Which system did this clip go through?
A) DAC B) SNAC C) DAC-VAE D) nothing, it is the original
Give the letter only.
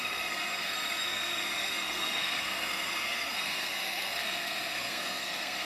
B